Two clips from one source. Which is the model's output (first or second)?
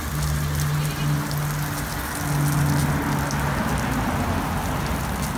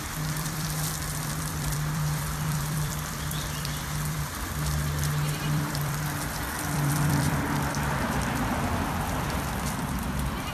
second